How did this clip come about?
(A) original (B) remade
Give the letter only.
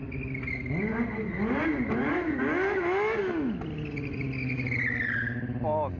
A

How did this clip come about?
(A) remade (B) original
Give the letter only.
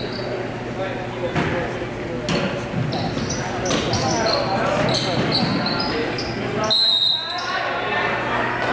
B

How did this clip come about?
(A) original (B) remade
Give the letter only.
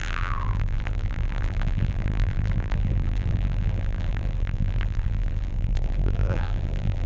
B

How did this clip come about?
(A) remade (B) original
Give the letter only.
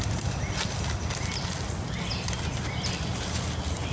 B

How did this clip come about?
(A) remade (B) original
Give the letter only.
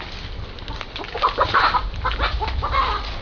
B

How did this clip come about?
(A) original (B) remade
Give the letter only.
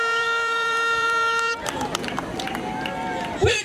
B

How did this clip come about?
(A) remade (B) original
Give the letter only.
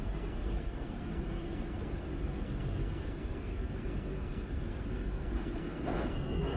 A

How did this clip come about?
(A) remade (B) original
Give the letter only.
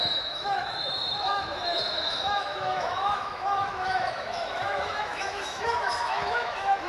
A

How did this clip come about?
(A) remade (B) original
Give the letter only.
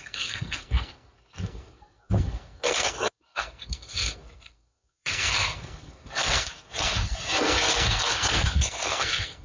A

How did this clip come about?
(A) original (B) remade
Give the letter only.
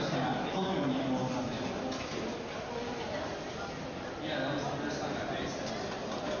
A